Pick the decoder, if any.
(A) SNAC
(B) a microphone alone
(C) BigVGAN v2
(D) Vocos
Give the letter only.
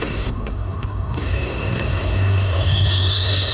A